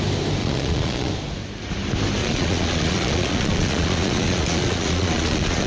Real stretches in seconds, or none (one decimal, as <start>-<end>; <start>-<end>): 0.0-0.4; 1.1-2.2